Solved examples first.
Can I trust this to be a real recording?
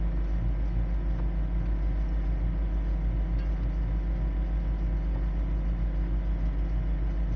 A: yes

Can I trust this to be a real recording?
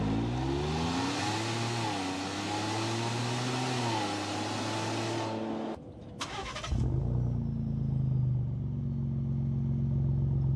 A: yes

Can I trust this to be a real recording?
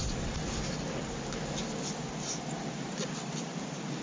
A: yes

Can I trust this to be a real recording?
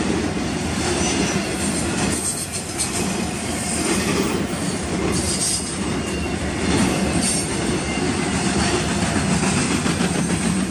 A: yes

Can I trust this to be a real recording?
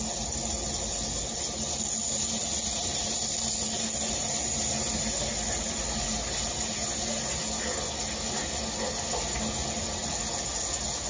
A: yes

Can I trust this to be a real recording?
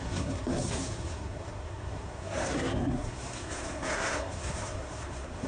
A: no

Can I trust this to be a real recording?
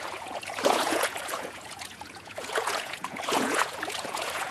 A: no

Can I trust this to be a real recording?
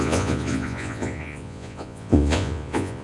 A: no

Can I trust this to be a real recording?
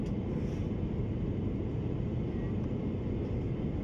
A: yes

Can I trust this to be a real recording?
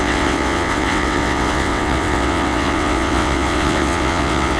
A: no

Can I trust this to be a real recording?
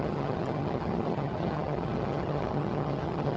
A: no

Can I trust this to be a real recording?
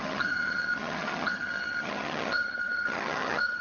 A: no